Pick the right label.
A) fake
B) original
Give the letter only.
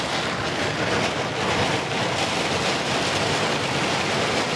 B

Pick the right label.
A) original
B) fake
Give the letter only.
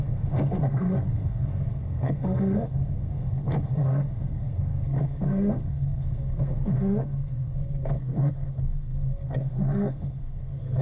B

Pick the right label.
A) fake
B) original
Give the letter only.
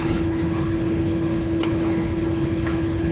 A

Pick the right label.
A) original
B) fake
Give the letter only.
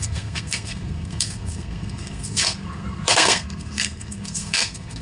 B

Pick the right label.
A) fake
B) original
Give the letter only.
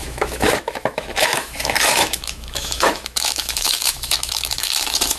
A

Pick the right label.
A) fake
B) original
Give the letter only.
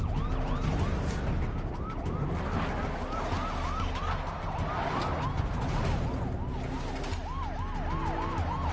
B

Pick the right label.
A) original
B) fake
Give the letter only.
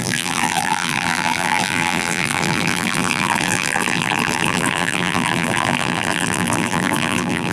B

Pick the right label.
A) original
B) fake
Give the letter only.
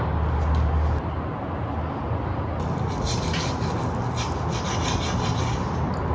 A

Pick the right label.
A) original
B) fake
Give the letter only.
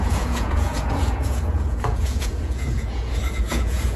B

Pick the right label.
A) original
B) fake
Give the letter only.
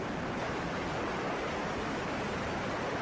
A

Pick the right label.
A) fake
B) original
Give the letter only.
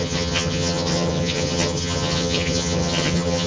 A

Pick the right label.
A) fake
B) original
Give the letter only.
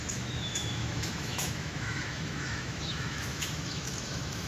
A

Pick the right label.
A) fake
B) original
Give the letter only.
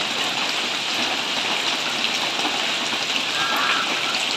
B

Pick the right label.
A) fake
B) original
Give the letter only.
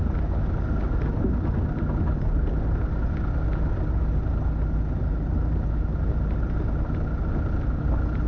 B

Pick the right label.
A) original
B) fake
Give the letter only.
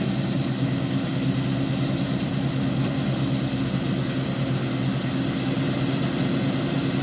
A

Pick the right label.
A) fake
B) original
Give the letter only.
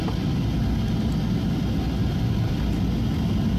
B